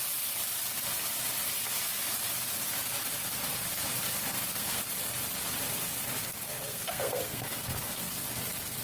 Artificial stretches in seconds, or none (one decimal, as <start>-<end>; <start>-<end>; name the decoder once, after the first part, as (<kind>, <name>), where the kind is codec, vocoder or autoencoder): 4.3-4.8 (codec, SNAC); 6.2-8.1